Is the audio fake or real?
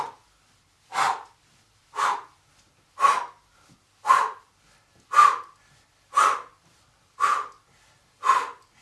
real